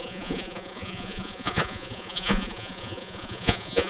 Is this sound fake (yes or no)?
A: yes